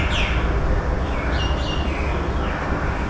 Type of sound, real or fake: real